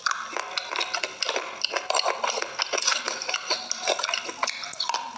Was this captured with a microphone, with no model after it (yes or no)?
yes